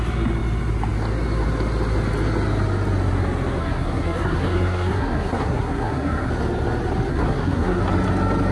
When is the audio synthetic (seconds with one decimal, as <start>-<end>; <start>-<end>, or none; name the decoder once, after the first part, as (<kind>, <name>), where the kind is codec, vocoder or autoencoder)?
3.6-6.3 (codec, SNAC); 7.1-7.8